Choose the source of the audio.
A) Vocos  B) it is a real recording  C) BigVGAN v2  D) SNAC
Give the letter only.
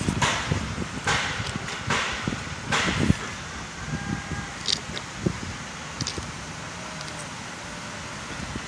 B